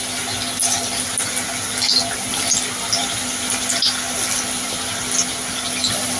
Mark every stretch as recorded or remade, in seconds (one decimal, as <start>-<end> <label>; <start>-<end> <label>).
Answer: 0.0-6.2 recorded

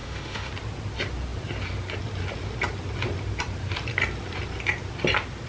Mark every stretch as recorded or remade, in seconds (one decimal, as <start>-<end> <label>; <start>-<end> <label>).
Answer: 0.0-0.5 remade; 0.5-5.5 recorded